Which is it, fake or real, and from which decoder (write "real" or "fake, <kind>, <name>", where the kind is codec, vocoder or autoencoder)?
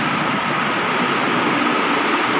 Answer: real